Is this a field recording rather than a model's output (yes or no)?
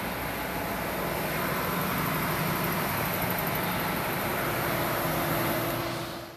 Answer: yes